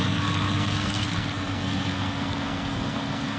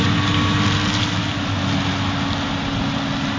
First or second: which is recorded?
second